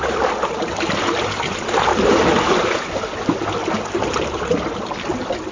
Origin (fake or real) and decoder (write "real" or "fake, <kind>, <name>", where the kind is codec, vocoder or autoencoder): real